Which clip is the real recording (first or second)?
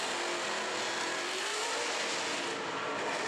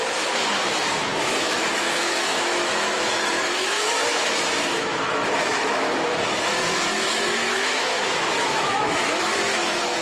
first